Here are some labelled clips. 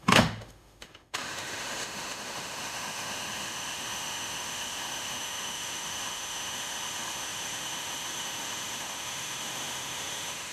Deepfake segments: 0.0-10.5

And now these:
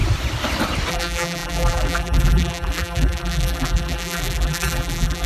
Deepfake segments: 0.9-5.3

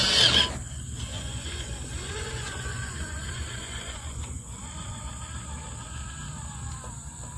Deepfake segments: 1.1-5.1

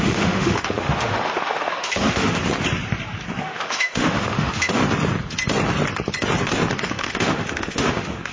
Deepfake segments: 0.0-2.4; 3.4-4.8; 6.9-8.3